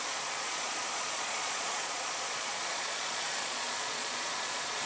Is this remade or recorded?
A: remade